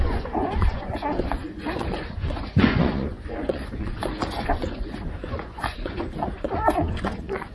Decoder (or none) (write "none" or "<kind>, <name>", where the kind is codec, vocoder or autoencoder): vocoder, Vocos